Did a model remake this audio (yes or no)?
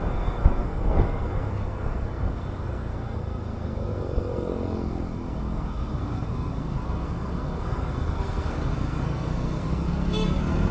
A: yes